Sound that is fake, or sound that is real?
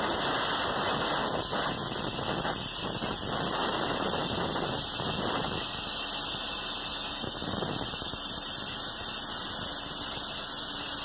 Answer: real